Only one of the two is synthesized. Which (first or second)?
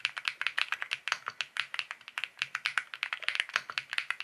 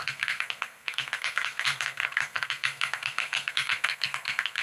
second